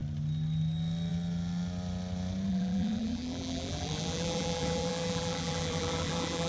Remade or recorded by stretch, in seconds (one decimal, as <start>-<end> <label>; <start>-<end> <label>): 0.0-2.5 recorded; 2.5-6.5 remade